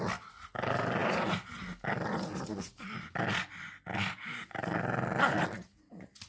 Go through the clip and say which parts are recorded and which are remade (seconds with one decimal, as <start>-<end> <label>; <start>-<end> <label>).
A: 0.0-6.3 recorded